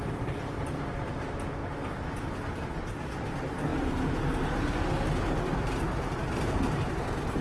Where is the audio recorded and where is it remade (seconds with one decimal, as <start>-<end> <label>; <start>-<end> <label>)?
0.0-1.6 remade; 1.6-2.9 recorded; 2.9-7.4 remade